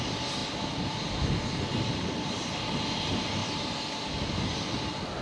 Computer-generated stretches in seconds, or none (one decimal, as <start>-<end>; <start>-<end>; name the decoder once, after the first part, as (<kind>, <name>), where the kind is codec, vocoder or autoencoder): 0.4-1.2 (vocoder, BigVGAN v2)